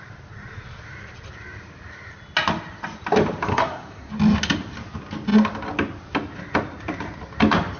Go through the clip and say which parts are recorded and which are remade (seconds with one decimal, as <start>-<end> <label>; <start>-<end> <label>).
0.0-3.5 recorded; 3.5-4.1 remade; 4.1-7.8 recorded

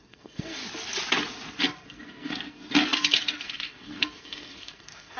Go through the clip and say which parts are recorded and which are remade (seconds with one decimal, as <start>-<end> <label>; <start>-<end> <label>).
0.0-0.6 remade; 0.6-1.6 recorded; 1.6-5.2 remade